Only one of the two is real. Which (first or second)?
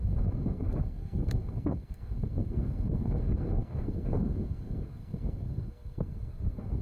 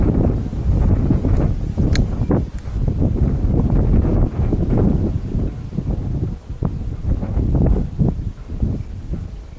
second